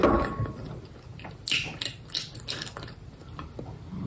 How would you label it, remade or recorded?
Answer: recorded